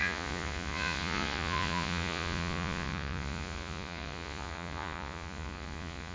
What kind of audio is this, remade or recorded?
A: remade